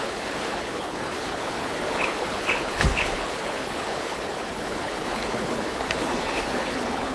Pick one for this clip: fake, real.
fake